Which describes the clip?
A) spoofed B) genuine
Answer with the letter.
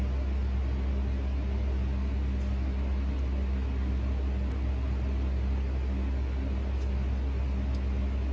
B